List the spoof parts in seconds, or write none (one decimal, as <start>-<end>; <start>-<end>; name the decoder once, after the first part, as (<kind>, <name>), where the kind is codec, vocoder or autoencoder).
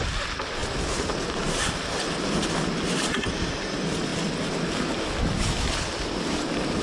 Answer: none